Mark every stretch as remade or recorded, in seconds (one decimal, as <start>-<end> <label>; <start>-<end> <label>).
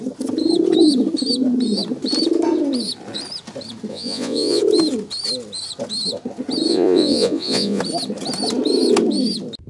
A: 0.0-3.9 recorded; 3.9-4.6 remade; 4.6-6.7 recorded; 6.7-7.8 remade; 7.8-9.7 recorded